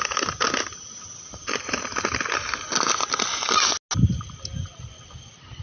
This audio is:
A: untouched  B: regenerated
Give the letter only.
A